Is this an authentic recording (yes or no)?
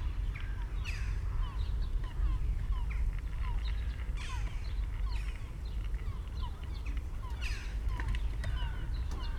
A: yes